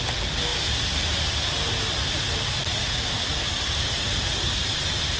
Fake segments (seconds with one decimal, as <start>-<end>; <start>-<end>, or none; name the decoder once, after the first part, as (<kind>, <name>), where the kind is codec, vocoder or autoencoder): 2.6-5.2 (vocoder, BigVGAN v2)